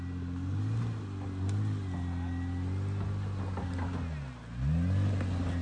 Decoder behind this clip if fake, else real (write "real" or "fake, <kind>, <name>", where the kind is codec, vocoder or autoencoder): real